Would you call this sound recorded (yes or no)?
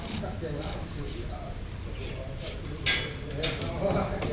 yes